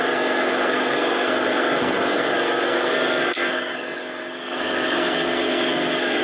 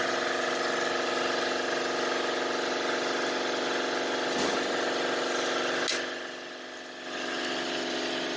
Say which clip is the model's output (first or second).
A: first